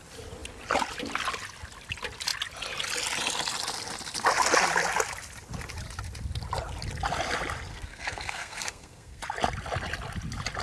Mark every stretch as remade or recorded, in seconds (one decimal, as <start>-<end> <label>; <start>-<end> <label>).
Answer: 0.0-7.7 recorded; 7.7-9.2 remade; 9.2-10.6 recorded